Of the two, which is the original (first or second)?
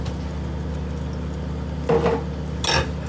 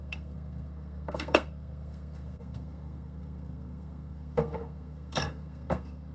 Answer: first